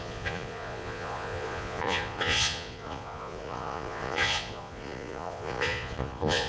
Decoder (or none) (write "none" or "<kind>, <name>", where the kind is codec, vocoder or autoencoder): vocoder, Vocos